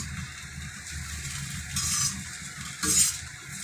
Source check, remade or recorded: recorded